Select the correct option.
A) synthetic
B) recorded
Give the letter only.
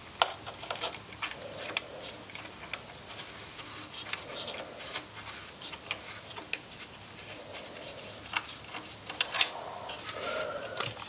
B